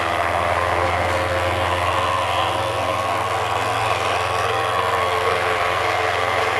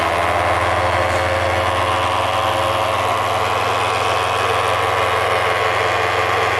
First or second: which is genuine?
second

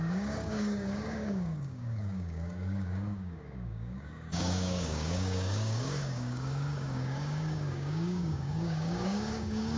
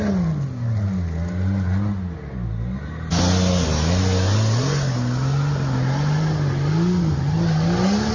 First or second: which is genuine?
second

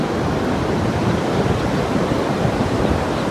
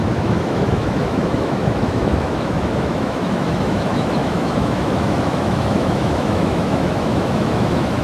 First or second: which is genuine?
first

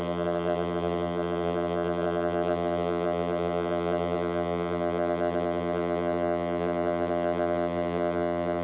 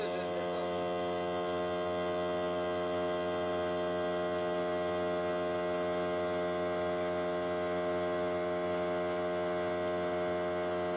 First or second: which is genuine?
second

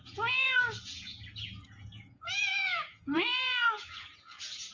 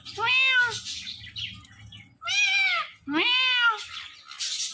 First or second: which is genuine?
second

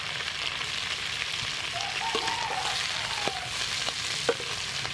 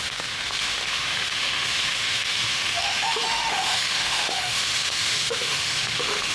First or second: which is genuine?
first